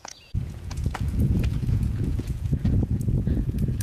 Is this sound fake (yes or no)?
yes